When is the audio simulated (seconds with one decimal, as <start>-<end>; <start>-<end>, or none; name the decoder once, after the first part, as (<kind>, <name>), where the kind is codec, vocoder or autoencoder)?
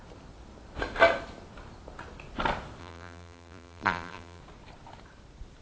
2.8-4.4 (vocoder, BigVGAN v2)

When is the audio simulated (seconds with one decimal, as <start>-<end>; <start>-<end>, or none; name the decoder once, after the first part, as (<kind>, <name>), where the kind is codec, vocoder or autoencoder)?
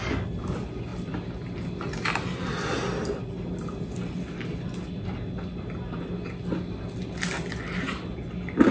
none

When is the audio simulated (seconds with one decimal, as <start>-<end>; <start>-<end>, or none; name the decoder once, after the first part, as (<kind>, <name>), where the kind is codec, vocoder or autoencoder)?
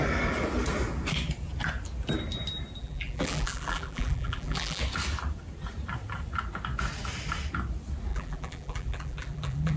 2.8-4.8 (vocoder, BigVGAN v2); 8.1-9.8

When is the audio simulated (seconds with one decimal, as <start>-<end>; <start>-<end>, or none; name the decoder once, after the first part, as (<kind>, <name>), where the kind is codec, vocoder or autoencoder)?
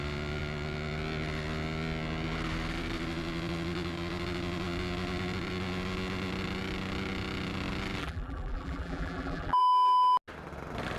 8.0-9.6 (vocoder, BigVGAN v2)